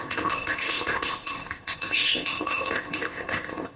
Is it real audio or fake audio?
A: fake